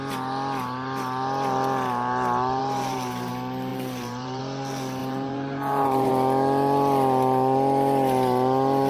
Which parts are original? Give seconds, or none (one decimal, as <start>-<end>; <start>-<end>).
0.0-2.6; 3.3-3.7; 4.4-5.0; 6.1-8.9